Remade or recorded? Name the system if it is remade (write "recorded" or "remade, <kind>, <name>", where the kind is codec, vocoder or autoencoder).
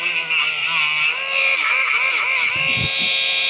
recorded